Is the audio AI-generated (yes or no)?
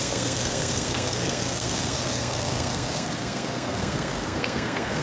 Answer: yes